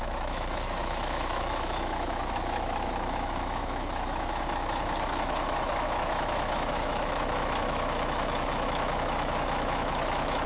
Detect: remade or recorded remade